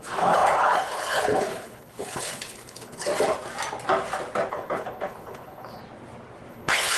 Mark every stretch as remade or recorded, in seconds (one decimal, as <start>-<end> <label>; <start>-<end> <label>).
0.0-3.1 remade; 3.1-4.5 recorded; 4.5-5.8 remade; 5.8-6.5 recorded; 6.5-7.0 remade